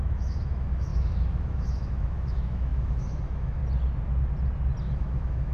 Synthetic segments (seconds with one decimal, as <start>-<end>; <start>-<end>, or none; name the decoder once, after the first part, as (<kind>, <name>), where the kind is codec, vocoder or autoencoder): 0.0-3.6 (autoencoder, DAC-VAE); 4.8-5.5